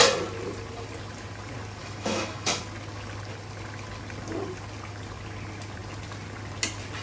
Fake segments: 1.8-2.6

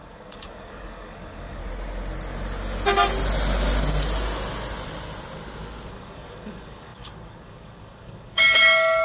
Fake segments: 0.0-1.6; 5.9-9.0

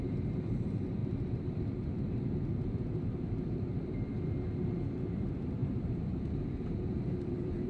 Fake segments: 0.0-1.0; 1.6-7.7

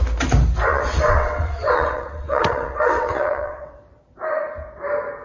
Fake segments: 0.7-3.8

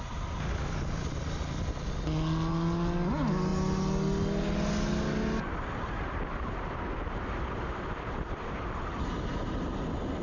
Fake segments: none

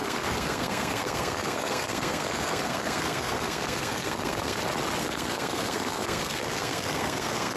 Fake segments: 0.0-4.6; 5.0-7.6